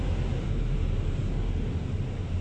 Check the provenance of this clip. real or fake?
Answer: real